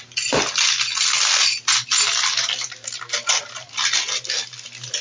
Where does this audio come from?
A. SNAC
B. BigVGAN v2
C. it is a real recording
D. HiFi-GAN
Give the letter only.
C